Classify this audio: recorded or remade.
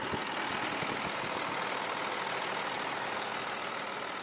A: recorded